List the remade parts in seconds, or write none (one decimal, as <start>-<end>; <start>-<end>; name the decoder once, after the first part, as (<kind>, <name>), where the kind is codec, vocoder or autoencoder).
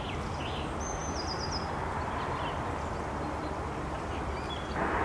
3.4-4.1 (vocoder, BigVGAN v2)